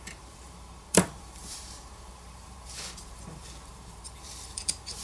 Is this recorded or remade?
remade